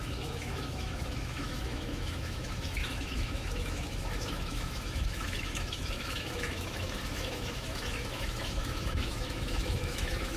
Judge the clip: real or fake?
fake